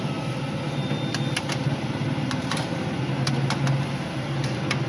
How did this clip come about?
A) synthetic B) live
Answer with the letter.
B